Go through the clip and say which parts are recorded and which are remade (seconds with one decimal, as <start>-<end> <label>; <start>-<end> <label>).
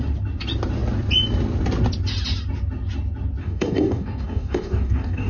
0.0-3.4 recorded; 3.4-5.3 remade